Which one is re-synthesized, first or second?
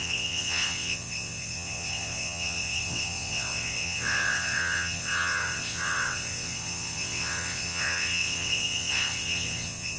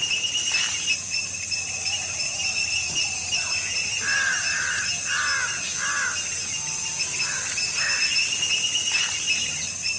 first